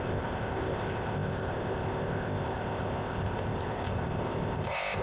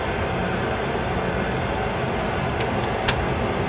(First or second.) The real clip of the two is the second